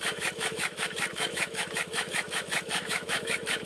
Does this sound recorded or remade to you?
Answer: remade